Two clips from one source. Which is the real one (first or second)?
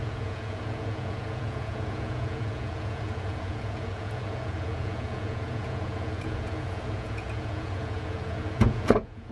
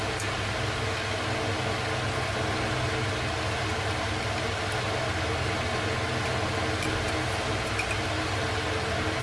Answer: second